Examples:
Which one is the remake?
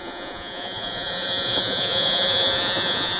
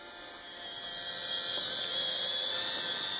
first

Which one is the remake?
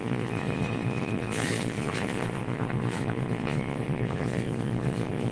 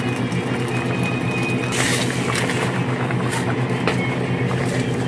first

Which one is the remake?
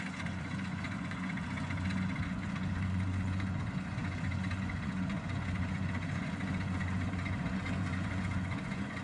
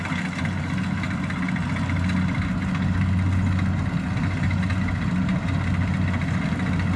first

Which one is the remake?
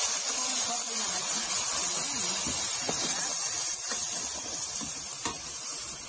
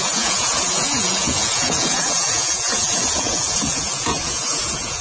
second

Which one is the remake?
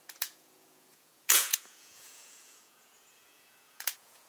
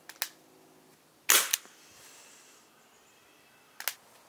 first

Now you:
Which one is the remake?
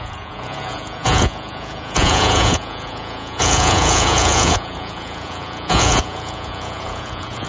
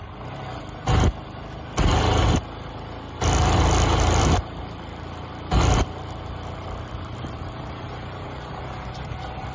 first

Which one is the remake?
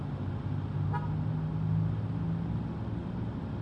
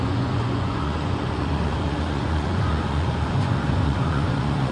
second